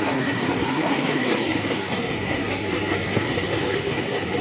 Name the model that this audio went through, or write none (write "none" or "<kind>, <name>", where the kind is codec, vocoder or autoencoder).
codec, SNAC